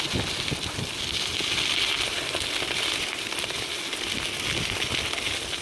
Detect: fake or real real